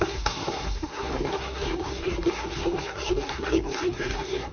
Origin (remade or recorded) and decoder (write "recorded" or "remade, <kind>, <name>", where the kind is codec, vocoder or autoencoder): remade, codec, SNAC